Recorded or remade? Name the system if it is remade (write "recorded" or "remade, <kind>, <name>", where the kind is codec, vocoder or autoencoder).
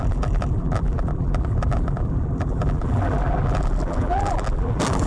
remade, vocoder, BigVGAN v2